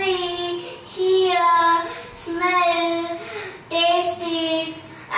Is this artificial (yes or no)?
no